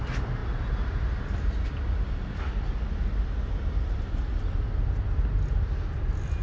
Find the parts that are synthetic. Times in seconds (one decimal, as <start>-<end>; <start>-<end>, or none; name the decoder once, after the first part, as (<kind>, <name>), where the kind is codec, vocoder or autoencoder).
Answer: none